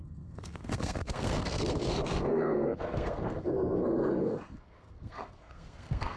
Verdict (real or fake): fake